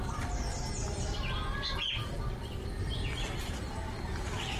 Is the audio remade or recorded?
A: recorded